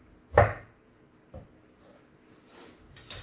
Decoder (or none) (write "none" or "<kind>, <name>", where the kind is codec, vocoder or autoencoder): none